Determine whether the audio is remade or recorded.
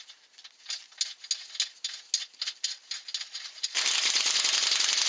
recorded